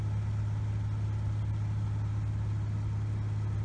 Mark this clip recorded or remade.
recorded